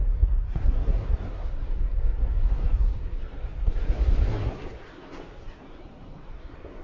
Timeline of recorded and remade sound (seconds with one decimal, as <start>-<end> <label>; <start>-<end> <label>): 0.0-6.8 remade

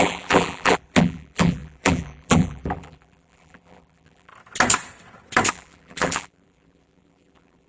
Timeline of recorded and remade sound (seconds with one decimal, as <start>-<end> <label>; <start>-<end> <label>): 0.0-4.3 remade; 4.3-5.5 recorded; 5.5-7.7 remade

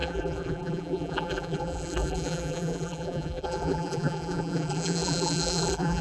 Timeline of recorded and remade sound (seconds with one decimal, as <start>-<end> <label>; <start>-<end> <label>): 0.0-6.0 remade